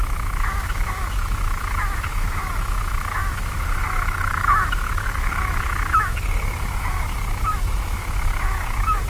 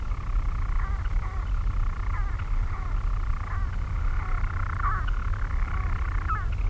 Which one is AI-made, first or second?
first